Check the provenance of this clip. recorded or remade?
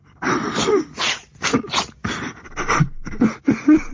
recorded